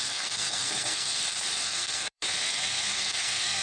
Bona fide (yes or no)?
no